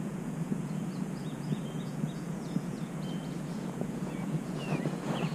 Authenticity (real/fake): fake